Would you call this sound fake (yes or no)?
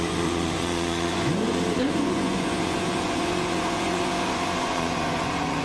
yes